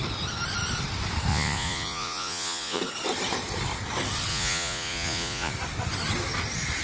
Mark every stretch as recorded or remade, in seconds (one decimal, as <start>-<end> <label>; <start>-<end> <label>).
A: 0.0-1.3 recorded; 1.3-2.8 remade; 2.8-4.3 recorded; 4.3-5.5 remade; 5.5-6.8 recorded